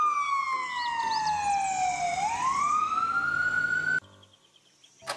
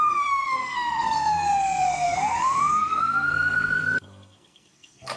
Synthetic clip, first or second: second